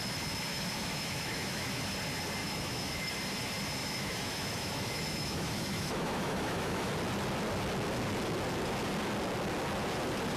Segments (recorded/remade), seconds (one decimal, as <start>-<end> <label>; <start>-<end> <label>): 0.0-0.5 recorded; 0.5-1.8 remade; 1.8-2.4 recorded; 2.4-3.1 remade; 3.1-3.8 recorded; 3.8-6.9 remade; 6.9-10.4 recorded